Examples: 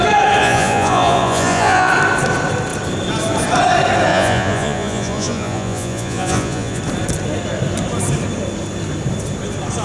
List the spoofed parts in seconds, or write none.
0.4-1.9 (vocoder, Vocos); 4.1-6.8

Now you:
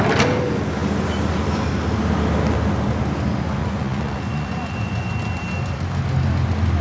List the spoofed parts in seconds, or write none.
3.6-5.1 (vocoder, Vocos)

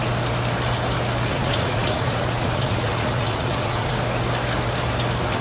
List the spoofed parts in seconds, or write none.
1.3-3.9 (vocoder, Vocos)

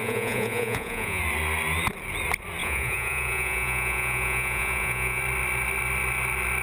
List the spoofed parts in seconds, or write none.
0.0-1.2 (vocoder, Vocos); 2.6-5.2

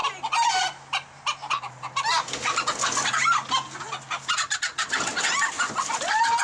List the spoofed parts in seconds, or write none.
none

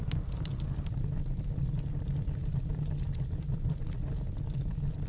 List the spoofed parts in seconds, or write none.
none

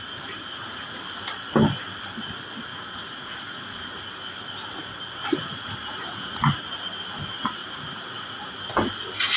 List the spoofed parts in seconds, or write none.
0.4-1.0 (vocoder, Vocos); 2.7-4.0; 5.2-6.6; 7.6-8.5

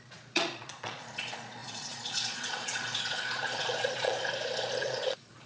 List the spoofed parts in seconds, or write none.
0.0-4.1 (vocoder, Vocos); 4.8-5.5